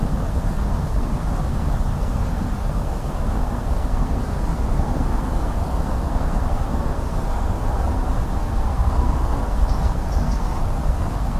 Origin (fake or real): fake